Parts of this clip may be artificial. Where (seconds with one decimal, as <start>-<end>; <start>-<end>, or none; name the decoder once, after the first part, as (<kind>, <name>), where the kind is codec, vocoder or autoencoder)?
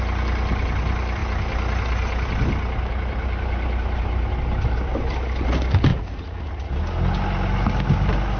5.9-6.7 (vocoder, Vocos)